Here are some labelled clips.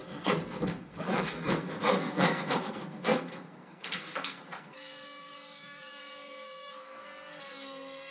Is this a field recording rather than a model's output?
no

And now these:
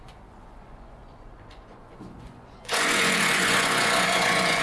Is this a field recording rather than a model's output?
no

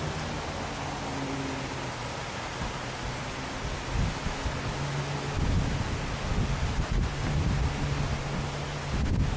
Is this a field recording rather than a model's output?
yes